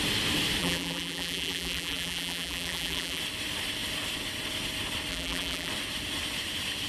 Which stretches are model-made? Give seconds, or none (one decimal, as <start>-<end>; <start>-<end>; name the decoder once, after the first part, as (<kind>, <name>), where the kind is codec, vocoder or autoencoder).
0.6-3.2 (vocoder, BigVGAN v2); 5.1-5.7